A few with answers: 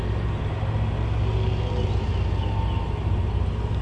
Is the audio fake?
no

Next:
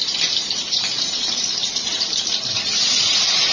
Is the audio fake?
yes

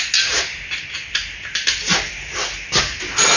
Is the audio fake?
no